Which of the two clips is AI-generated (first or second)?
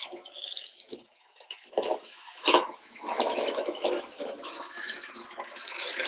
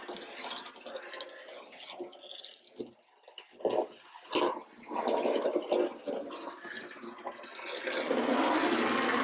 first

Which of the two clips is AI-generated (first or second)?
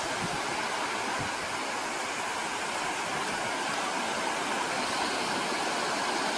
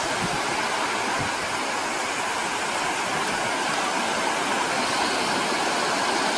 first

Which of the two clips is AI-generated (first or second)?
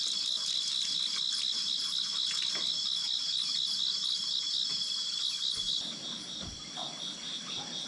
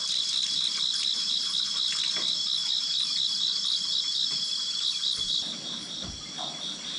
second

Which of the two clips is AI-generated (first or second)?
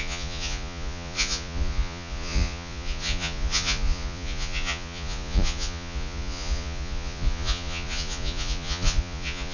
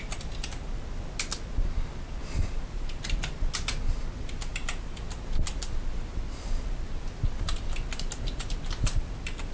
first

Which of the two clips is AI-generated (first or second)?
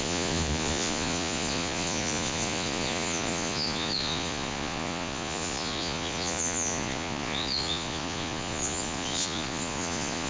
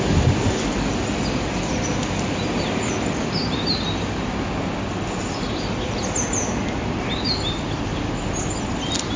first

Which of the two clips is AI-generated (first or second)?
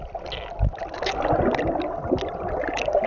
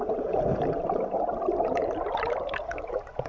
second